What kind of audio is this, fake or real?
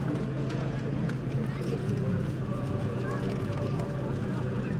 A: fake